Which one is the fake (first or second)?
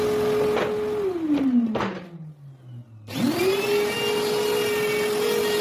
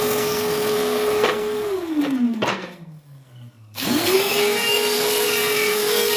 second